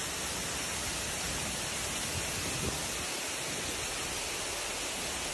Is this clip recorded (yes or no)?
yes